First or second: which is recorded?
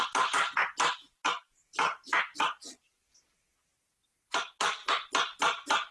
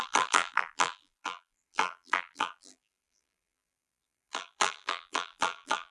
first